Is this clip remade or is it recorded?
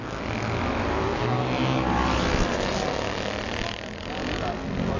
recorded